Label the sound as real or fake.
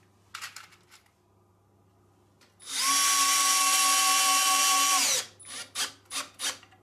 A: real